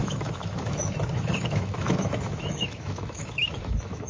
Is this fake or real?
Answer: fake